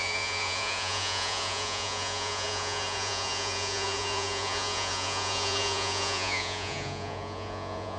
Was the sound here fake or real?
fake